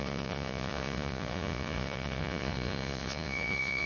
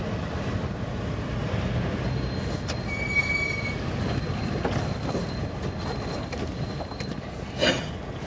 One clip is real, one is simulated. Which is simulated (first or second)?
first